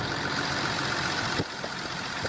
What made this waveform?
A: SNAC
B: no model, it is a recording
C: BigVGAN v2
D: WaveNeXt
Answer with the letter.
B